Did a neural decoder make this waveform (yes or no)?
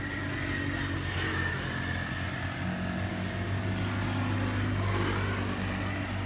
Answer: no